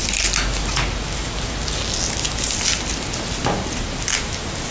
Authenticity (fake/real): real